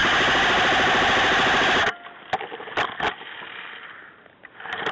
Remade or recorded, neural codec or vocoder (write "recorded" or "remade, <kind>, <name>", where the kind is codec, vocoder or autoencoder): recorded